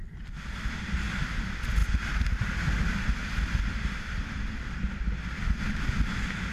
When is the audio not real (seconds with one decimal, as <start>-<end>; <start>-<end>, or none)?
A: none